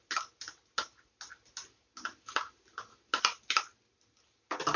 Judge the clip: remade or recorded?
recorded